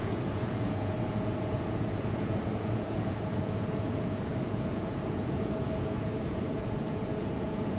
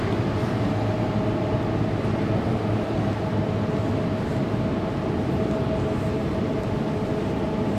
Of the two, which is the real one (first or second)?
second